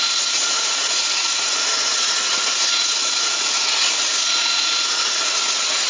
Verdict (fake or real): fake